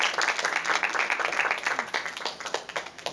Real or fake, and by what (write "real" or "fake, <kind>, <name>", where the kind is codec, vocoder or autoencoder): real